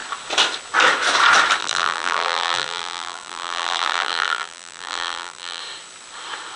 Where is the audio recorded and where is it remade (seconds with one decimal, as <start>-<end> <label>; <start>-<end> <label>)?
0.0-1.6 recorded; 1.6-5.6 remade; 5.6-6.6 recorded